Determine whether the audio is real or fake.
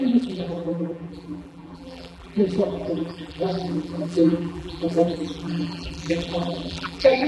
fake